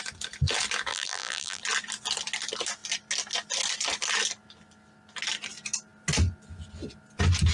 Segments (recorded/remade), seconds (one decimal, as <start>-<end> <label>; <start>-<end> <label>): 0.0-0.9 recorded; 0.9-1.6 remade; 1.6-7.5 recorded